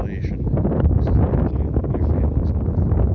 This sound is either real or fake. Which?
real